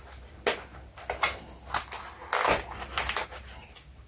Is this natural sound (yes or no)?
yes